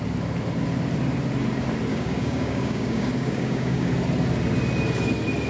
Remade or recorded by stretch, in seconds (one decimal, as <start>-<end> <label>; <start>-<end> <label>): 0.0-1.9 recorded; 1.9-3.9 remade; 3.9-5.5 recorded